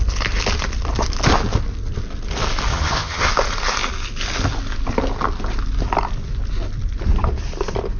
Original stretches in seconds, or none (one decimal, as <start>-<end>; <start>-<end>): 0.0-2.7; 3.3-8.0